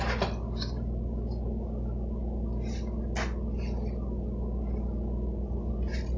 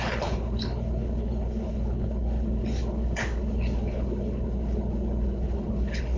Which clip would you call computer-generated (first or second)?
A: second